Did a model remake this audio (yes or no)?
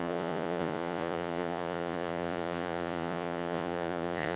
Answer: yes